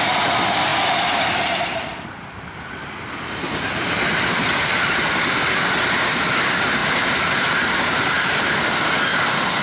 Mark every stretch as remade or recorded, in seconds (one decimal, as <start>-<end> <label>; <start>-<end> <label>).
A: 0.0-9.6 recorded